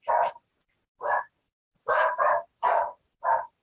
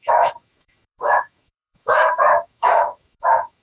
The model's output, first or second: second